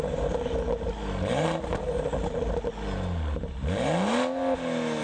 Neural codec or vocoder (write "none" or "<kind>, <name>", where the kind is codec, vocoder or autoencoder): none